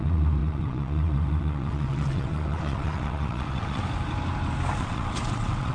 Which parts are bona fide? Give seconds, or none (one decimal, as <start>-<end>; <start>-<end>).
3.8-4.8